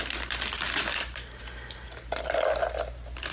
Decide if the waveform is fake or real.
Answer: real